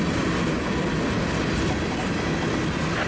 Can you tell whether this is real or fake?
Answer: real